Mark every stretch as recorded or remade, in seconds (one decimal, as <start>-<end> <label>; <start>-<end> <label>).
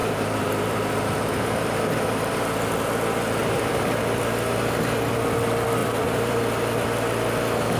0.0-2.4 remade; 2.4-3.4 recorded; 3.4-4.0 remade; 4.0-5.8 recorded; 5.8-6.4 remade; 6.4-7.8 recorded